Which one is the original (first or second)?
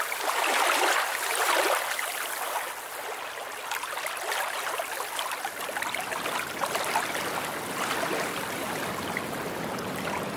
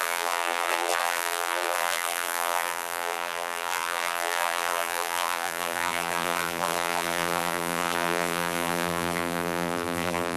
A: first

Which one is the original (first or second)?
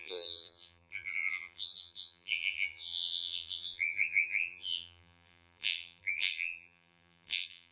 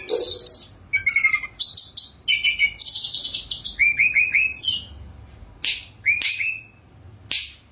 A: second